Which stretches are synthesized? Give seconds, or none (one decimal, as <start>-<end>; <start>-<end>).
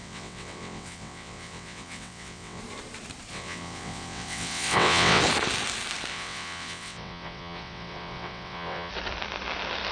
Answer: 0.0-2.6; 3.3-5.2; 6.1-8.9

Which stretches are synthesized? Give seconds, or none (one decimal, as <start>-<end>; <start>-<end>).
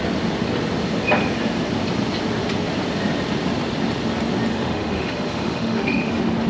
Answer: 4.5-6.1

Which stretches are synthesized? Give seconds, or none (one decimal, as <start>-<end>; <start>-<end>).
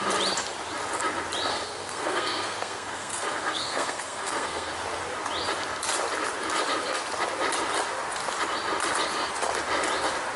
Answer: 1.5-4.7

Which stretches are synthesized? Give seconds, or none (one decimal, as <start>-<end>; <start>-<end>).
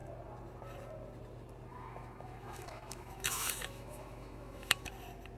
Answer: 1.7-4.9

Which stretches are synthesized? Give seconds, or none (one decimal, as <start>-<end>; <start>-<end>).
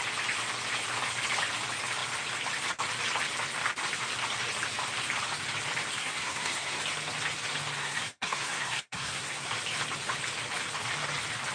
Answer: 6.0-6.8; 7.8-9.5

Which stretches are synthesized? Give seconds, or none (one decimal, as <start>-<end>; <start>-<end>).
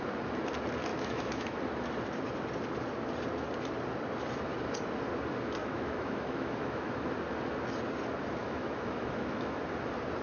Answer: 0.9-1.6; 5.6-7.1; 8.4-9.6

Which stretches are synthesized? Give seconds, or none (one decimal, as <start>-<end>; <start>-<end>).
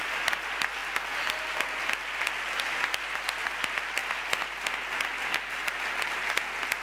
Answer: none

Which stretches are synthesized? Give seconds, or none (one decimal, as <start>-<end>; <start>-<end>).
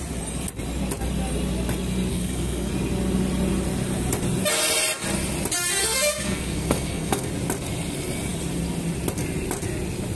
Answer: 2.1-2.7; 5.8-7.3